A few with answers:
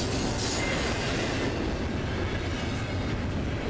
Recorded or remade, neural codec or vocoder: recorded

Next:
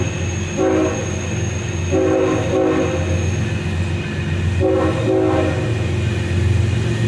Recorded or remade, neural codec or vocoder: recorded